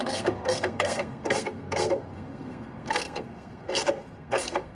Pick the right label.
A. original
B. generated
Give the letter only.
B